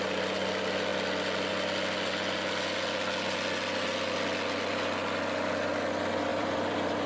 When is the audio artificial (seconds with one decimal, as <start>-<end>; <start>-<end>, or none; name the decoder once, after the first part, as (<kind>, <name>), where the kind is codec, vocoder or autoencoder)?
6.3-7.1 (vocoder, BigVGAN v2)